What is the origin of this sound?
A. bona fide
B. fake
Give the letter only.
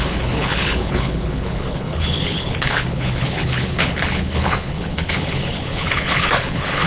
B